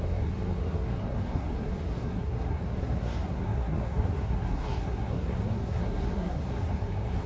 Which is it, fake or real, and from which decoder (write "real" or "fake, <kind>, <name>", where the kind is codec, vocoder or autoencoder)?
fake, codec, SNAC